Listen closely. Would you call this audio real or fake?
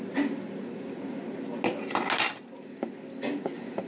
real